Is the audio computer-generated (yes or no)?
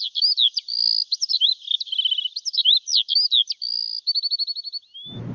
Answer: no